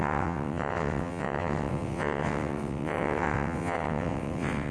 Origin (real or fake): fake